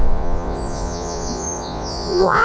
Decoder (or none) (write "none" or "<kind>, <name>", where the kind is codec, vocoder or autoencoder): vocoder, Vocos